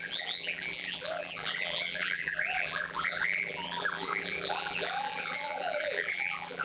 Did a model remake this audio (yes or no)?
yes